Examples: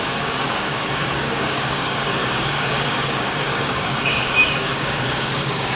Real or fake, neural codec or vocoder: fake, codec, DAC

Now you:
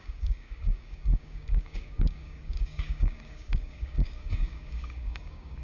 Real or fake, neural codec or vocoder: fake, codec, DAC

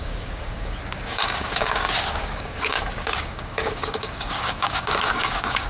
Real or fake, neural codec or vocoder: fake, codec, DAC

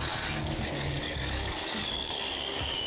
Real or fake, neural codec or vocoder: fake, codec, DAC